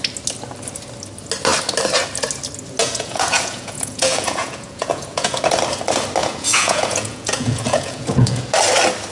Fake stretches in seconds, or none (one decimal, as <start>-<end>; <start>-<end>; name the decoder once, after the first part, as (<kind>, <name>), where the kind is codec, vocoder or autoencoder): 2.8-5.5 (vocoder, Vocos); 6.2-8.4